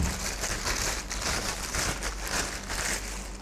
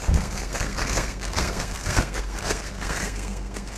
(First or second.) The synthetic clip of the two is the second